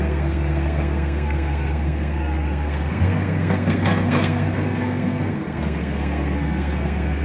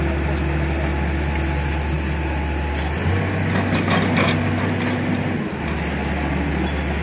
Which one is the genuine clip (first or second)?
second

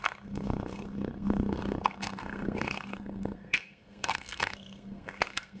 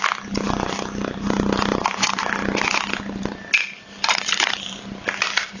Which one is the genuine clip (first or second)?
second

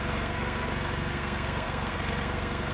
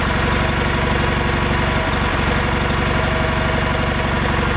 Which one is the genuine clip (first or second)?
second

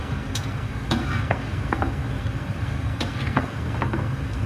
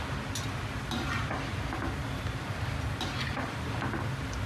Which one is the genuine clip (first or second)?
second